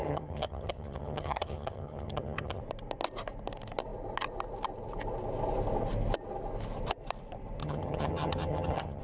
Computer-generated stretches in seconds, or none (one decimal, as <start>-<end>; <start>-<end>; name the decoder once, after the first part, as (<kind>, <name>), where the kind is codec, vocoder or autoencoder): 0.0-2.6 (vocoder, HiFi-GAN); 7.6-9.0